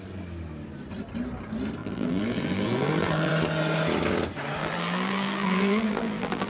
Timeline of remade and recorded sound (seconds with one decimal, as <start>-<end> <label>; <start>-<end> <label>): 0.0-1.8 recorded; 1.8-3.3 remade; 3.3-4.6 recorded; 4.6-6.5 remade

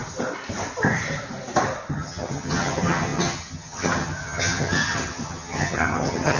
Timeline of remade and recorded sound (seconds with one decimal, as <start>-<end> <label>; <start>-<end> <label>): 0.0-1.9 recorded; 1.9-6.4 remade